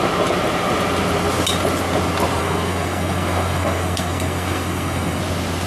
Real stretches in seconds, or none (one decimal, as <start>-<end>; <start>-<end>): 0.0-2.4; 5.2-5.7